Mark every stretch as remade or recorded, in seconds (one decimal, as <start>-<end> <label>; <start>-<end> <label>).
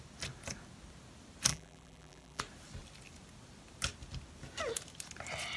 0.0-1.5 recorded; 1.5-2.4 remade; 2.4-5.6 recorded